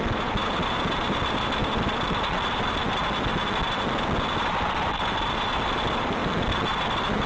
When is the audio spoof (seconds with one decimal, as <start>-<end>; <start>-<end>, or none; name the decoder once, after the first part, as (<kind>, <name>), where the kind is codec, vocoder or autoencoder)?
none